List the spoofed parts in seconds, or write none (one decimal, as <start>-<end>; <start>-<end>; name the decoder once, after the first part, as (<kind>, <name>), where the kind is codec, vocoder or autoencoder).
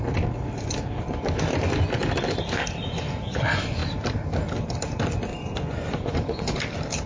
5.3-6.6 (vocoder, Vocos)